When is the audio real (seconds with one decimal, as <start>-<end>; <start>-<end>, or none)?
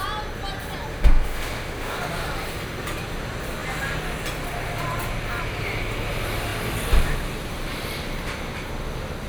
0.0-0.9; 2.0-9.3